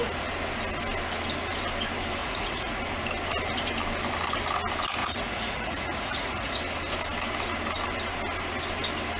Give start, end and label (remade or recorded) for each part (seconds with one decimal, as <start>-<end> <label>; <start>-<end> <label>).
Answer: 0.0-2.2 recorded; 2.2-2.8 remade; 2.8-5.0 recorded; 5.0-6.6 remade; 6.6-9.2 recorded

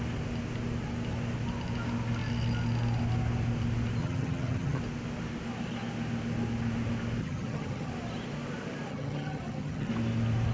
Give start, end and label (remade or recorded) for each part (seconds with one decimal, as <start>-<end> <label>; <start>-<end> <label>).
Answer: 0.0-4.0 recorded; 4.0-4.8 remade; 4.8-7.2 recorded; 7.2-7.9 remade; 7.9-8.9 recorded; 8.9-9.9 remade; 9.9-10.5 recorded

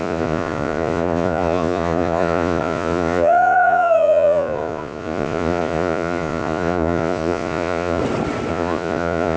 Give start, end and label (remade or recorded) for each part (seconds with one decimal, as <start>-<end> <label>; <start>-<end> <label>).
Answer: 0.0-8.0 remade; 8.0-8.5 recorded; 8.5-9.4 remade

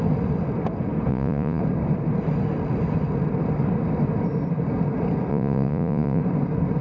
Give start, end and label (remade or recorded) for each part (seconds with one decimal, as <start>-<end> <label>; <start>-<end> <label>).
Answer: 0.0-1.1 recorded; 1.1-1.6 remade; 1.6-5.3 recorded; 5.3-6.2 remade; 6.2-6.8 recorded

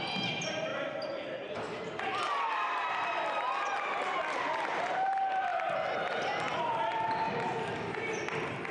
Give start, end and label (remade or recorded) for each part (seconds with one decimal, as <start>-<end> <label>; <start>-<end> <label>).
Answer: 0.0-8.7 recorded

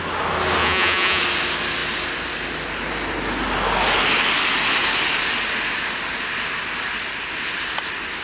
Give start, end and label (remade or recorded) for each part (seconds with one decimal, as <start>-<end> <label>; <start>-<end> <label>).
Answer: 0.0-0.6 recorded; 0.6-1.2 remade; 1.2-8.2 recorded

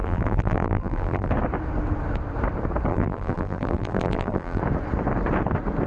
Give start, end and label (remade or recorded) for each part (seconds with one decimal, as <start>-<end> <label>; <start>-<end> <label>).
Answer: 0.0-1.3 remade; 1.3-2.9 recorded; 2.9-4.6 remade; 4.6-5.9 recorded

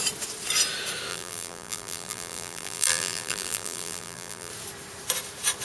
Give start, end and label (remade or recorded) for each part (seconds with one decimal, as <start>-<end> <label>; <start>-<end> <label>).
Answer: 0.0-1.1 recorded; 1.1-4.5 remade; 4.5-5.6 recorded